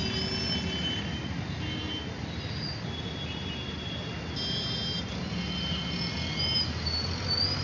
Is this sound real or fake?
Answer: real